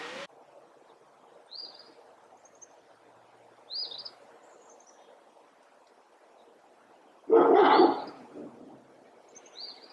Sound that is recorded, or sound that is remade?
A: recorded